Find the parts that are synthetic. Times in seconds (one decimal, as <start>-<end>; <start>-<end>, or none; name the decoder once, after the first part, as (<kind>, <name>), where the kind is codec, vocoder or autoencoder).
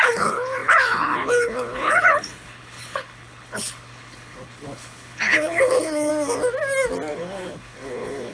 0.0-6.1 (codec, HILCodec); 7.1-8.3